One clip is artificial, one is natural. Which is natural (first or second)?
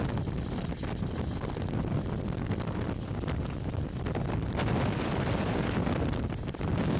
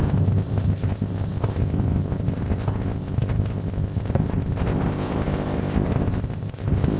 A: first